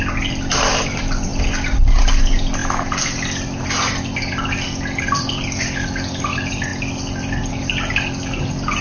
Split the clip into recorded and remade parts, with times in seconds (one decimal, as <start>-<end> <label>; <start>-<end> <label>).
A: 0.0-8.8 recorded